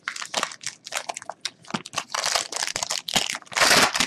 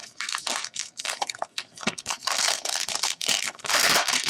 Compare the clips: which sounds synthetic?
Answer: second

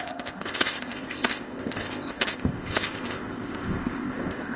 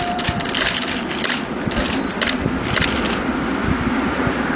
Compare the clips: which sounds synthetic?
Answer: first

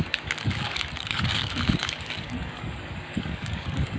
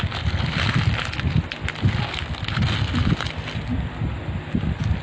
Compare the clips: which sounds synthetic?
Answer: first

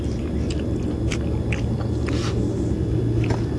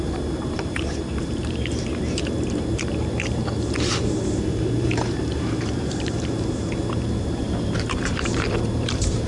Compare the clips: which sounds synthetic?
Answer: second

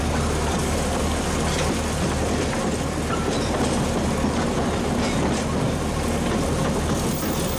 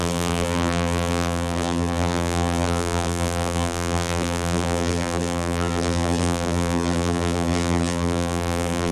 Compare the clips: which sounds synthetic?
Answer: second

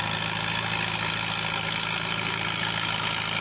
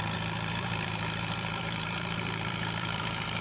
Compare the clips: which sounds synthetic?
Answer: second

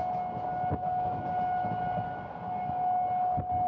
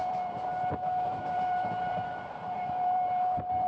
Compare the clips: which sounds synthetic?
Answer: second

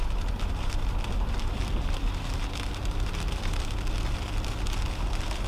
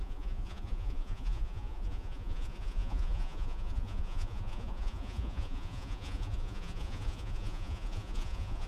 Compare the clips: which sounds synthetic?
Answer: second